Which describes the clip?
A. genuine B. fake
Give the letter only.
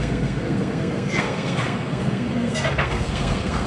B